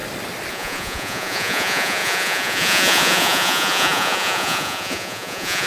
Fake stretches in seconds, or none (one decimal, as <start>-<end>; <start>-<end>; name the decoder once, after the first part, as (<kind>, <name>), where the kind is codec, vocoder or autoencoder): 0.5-5.7 (vocoder, Vocos)